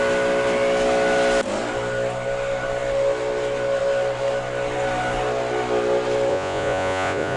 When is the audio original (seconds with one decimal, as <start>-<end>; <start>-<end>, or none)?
0.0-6.3